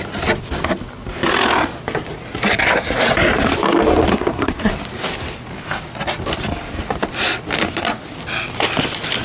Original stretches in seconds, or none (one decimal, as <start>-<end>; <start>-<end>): 0.0-4.1; 4.7-9.2